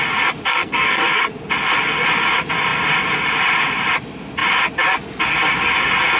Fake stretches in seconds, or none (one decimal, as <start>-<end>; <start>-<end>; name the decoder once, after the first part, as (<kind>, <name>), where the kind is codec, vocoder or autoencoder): 0.5-1.2 (codec, SNAC)